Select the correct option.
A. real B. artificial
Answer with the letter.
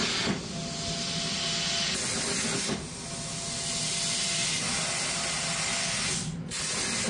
A